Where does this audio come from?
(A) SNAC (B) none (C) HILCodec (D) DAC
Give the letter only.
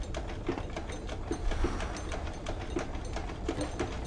B